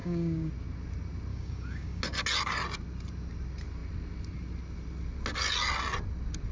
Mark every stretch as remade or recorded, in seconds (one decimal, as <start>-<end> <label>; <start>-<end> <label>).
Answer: 0.0-0.5 remade; 0.5-1.3 recorded; 1.3-2.0 remade; 2.0-6.5 recorded